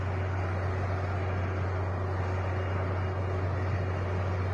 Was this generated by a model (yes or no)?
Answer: no